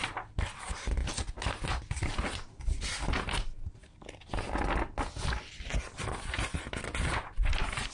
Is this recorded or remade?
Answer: recorded